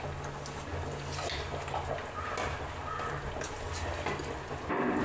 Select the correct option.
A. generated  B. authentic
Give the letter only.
B